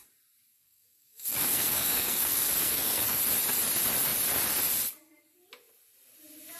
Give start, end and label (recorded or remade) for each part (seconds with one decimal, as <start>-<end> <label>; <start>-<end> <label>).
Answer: 0.0-0.5 recorded; 0.5-3.2 remade; 3.2-6.6 recorded